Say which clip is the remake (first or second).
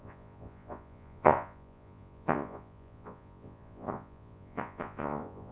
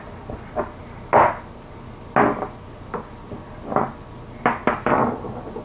first